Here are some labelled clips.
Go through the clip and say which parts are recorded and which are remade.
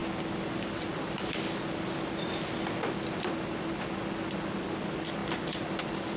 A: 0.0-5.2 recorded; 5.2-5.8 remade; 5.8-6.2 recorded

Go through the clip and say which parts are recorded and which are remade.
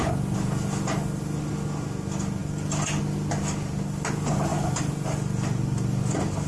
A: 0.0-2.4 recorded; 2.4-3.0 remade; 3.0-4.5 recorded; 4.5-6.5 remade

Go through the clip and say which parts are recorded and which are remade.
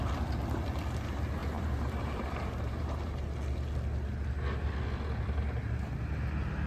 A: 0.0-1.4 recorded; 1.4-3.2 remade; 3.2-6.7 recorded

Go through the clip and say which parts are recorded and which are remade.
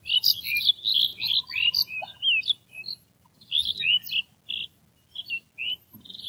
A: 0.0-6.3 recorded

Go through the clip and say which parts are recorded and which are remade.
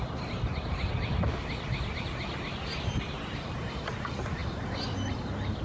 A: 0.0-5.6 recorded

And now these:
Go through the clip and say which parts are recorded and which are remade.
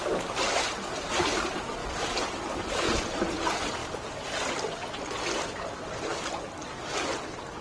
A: 0.0-7.6 recorded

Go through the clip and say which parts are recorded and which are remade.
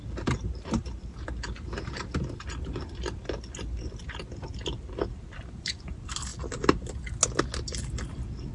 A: 0.0-4.5 recorded; 4.5-5.7 remade; 5.7-6.3 recorded; 6.3-7.1 remade; 7.1-8.5 recorded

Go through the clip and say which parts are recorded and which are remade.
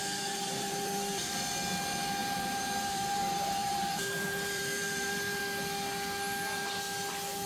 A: 0.0-1.3 remade; 1.3-2.2 recorded; 2.2-5.4 remade; 5.4-7.5 recorded